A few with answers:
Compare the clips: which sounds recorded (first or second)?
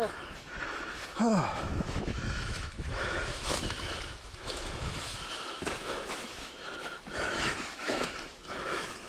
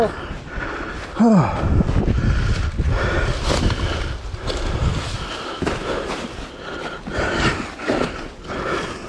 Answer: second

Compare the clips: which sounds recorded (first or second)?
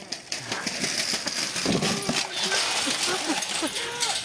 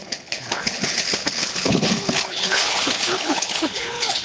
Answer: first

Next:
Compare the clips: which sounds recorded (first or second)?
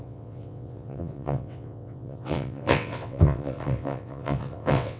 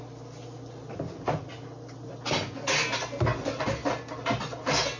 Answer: second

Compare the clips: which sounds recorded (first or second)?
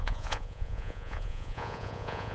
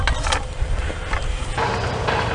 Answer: second